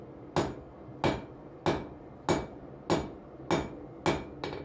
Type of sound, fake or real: real